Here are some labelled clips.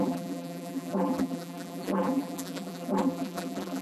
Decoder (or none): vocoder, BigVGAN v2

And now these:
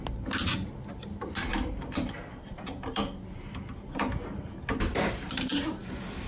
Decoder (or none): none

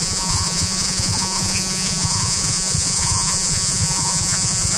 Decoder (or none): vocoder, Vocos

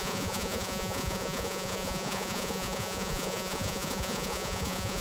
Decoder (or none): vocoder, Vocos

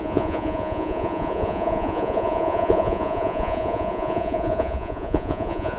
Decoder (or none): vocoder, Vocos